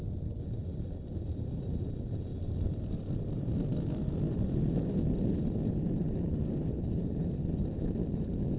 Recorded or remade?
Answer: recorded